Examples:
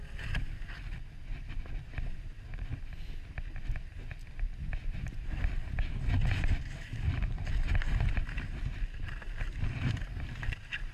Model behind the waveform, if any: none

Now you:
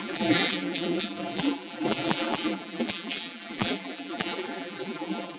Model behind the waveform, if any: vocoder, BigVGAN v2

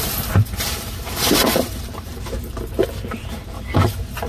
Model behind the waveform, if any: vocoder, BigVGAN v2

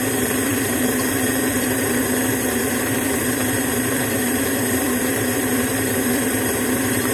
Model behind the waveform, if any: vocoder, BigVGAN v2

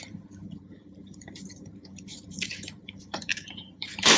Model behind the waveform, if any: vocoder, BigVGAN v2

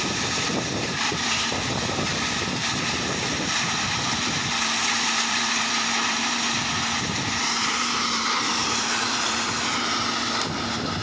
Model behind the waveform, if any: vocoder, BigVGAN v2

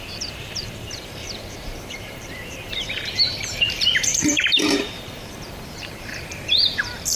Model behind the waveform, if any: vocoder, BigVGAN v2